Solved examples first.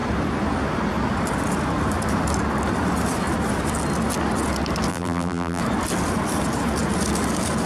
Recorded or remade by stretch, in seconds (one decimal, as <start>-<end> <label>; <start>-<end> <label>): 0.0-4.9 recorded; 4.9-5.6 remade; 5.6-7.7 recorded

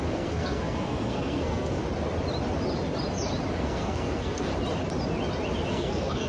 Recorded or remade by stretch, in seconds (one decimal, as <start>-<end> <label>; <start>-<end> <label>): 0.0-1.8 remade; 1.8-3.5 recorded; 3.5-4.5 remade; 4.5-5.7 recorded; 5.7-6.3 remade

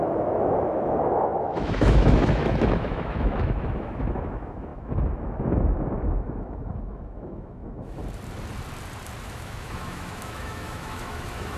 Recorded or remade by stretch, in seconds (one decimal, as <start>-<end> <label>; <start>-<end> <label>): 0.0-8.0 remade; 8.0-9.2 recorded; 9.2-11.6 remade

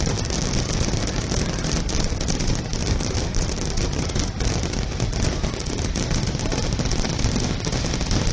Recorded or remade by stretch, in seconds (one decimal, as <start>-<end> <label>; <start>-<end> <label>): 0.0-2.8 recorded; 2.8-3.7 remade; 3.7-8.3 recorded

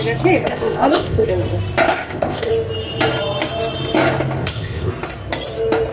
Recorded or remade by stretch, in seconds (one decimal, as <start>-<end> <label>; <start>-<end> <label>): 0.0-0.4 recorded; 0.4-1.3 remade; 1.3-1.9 recorded; 1.9-2.5 remade; 2.5-4.4 recorded; 4.4-4.9 remade; 4.9-5.9 recorded

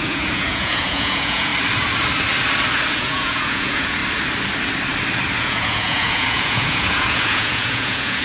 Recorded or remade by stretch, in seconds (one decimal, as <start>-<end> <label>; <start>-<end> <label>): 0.0-1.5 remade; 1.5-2.9 recorded; 2.9-4.0 remade; 4.0-5.4 recorded; 5.4-8.2 remade

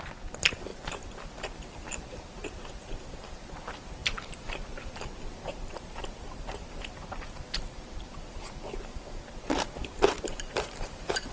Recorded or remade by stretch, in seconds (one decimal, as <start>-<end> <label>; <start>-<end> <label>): 0.0-0.7 remade; 0.7-1.5 recorded; 1.5-11.3 remade